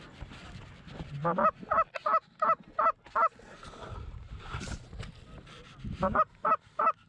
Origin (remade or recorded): recorded